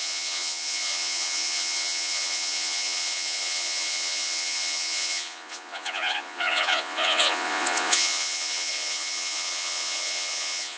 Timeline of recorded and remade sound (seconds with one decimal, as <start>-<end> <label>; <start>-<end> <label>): 0.0-10.8 remade